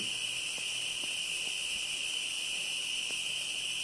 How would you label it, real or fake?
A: real